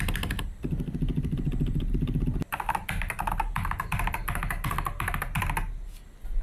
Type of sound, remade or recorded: recorded